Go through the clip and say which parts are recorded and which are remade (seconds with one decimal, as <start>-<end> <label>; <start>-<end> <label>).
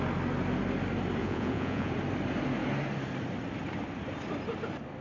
0.0-1.2 recorded; 1.2-1.9 remade; 1.9-5.0 recorded